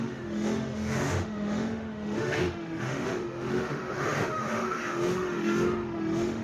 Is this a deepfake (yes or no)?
yes